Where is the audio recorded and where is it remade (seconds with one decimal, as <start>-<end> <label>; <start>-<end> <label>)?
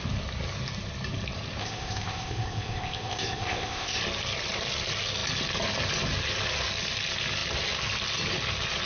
0.0-1.6 recorded; 1.6-4.0 remade; 4.0-8.9 recorded